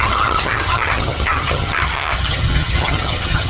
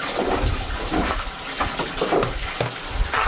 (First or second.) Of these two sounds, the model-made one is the first